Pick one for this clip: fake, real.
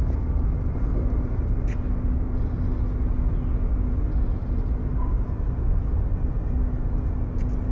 real